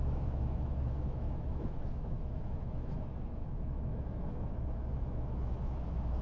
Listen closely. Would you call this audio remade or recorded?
remade